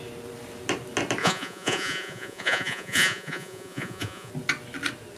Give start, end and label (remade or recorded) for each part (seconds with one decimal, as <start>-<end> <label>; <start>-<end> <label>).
0.0-1.2 recorded; 1.2-4.3 remade; 4.3-5.2 recorded